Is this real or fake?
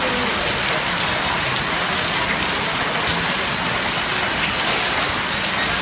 real